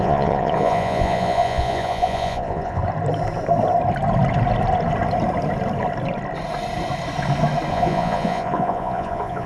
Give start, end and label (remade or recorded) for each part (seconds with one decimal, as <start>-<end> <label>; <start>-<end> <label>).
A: 0.0-2.8 remade; 2.8-7.7 recorded; 7.7-9.5 remade